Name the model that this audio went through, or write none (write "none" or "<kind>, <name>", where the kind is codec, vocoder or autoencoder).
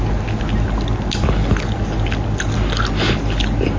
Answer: none